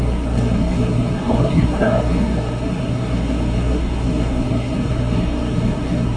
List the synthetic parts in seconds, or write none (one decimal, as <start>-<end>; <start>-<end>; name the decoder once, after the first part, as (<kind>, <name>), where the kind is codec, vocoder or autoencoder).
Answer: 0.0-6.2 (codec, SNAC)